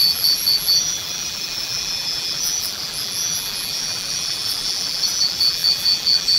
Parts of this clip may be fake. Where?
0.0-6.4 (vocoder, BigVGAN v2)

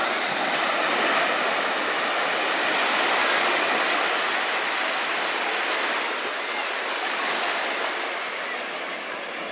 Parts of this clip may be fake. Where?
0.0-1.3 (vocoder, BigVGAN v2)

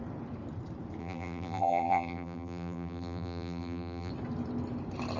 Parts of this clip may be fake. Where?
1.0-4.1 (vocoder, BigVGAN v2)

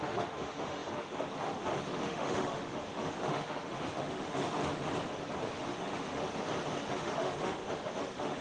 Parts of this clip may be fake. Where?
0.0-4.9 (autoencoder, DAC-VAE); 5.5-6.2; 6.8-8.4

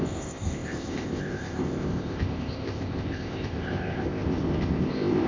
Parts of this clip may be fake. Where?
0.0-5.3 (codec, ZipCodec)

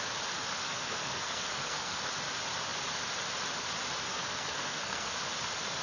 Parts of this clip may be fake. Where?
0.6-2.0 (codec, SNAC); 4.1-5.1

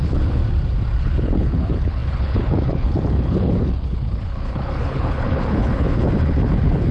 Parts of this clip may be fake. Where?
0.0-0.4 (codec, HILCodec); 1.0-6.9

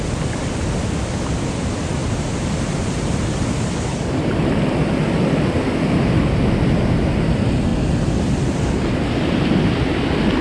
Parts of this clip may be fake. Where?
none